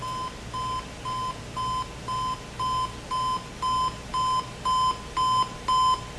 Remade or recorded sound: recorded